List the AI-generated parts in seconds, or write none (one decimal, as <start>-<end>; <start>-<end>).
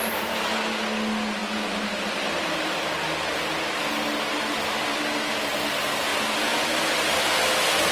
none